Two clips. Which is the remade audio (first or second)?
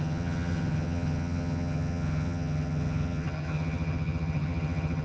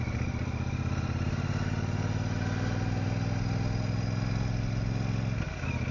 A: first